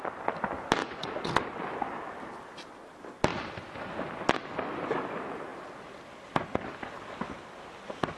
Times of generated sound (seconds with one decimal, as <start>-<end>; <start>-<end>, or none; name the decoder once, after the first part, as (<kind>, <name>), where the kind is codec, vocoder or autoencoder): 0.8-1.4 (vocoder, Vocos)